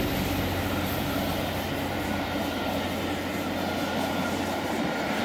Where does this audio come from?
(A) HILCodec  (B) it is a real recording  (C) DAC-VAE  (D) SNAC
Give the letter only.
B